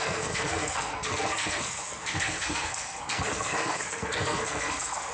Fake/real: fake